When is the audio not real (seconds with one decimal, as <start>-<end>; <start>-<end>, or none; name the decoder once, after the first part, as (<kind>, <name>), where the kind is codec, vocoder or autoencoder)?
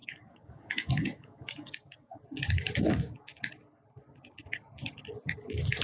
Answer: 0.0-2.2 (codec, DAC)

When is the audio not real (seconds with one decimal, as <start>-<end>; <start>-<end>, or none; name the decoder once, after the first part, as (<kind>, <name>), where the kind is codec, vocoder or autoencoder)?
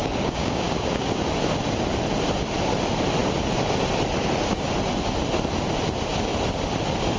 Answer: 0.0-1.2 (codec, DAC)